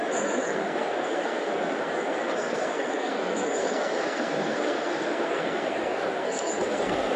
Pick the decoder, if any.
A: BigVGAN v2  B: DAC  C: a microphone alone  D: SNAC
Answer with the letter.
D